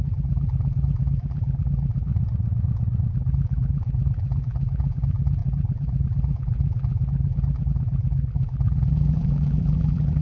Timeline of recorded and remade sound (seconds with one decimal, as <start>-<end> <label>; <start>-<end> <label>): 0.0-2.1 remade; 2.1-3.1 recorded; 3.1-10.2 remade